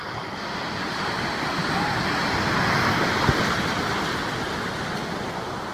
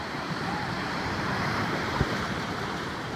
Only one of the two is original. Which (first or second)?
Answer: first